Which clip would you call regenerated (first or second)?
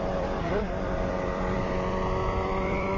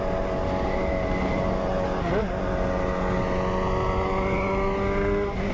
first